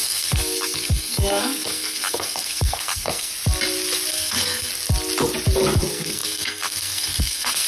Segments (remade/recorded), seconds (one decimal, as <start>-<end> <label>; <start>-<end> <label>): 0.0-3.3 remade; 3.3-4.1 recorded; 4.1-4.7 remade; 4.7-5.8 recorded; 5.8-7.7 remade